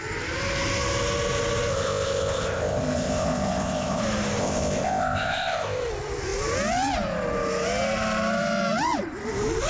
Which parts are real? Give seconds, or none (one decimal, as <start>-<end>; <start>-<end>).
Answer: 0.0-1.7; 4.0-4.4; 5.8-9.7